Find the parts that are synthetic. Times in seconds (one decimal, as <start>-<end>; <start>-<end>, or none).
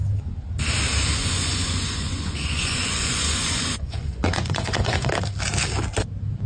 1.2-5.1